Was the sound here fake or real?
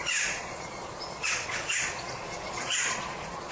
fake